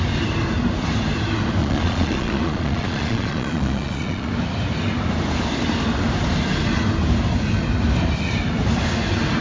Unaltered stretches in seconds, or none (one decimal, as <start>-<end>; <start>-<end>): 0.0-1.6; 4.3-9.4